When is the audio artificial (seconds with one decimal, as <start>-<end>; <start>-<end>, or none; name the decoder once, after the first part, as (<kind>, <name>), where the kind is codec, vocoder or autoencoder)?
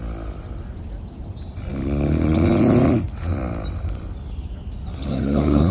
5.1-5.7 (codec, SNAC)